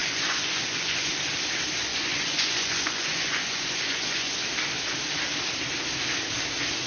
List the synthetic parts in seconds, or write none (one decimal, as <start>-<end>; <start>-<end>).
0.0-1.1; 1.9-4.4